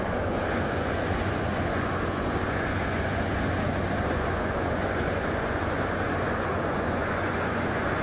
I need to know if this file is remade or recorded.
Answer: remade